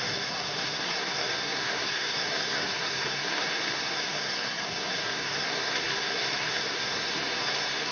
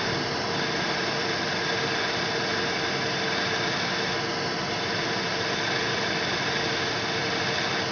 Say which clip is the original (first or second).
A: second